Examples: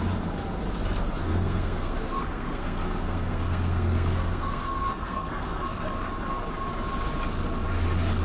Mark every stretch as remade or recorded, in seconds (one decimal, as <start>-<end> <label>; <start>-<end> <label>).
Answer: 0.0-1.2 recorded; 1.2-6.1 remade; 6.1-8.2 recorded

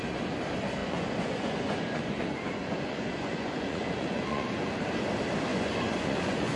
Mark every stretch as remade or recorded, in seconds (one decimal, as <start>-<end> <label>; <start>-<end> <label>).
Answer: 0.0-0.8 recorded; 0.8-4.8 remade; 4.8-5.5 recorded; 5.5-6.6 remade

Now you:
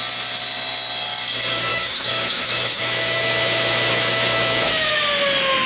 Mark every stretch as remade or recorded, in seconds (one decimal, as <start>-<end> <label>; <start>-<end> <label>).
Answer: 0.0-1.7 recorded; 1.7-5.0 remade; 5.0-5.7 recorded